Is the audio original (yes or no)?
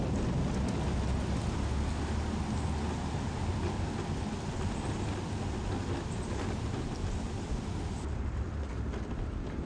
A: yes